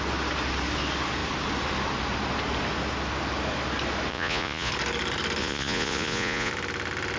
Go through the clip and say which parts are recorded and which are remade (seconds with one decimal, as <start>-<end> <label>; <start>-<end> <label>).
0.0-4.1 recorded; 4.1-4.7 remade; 4.7-5.4 recorded; 5.4-6.5 remade; 6.5-7.2 recorded